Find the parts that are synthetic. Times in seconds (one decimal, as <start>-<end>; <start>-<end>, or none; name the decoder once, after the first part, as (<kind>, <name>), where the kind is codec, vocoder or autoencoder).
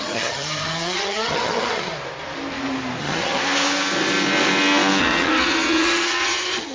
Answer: 0.0-1.9 (vocoder, HiFi-GAN); 3.0-3.4; 5.0-6.7